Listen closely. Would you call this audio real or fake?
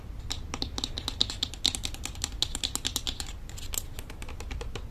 real